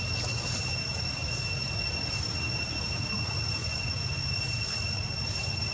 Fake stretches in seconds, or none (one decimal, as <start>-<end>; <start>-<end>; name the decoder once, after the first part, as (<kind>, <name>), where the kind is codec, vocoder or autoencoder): 3.6-4.1 (vocoder, Vocos)